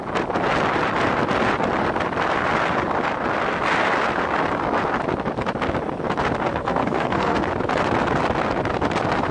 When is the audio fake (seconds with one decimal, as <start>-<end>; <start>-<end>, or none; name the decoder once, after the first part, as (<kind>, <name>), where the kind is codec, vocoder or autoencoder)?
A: 6.5-7.5 (codec, SNAC)